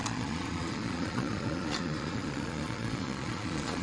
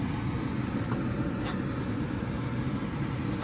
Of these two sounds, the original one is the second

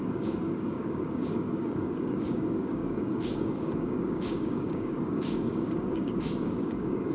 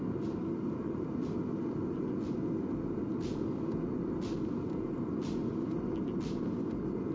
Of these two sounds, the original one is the second